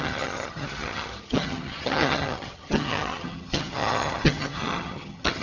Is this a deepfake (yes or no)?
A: yes